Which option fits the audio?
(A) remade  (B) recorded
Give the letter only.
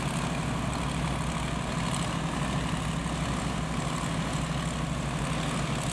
B